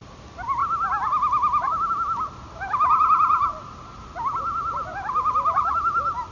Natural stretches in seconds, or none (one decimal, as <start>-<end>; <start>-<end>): 0.0-6.3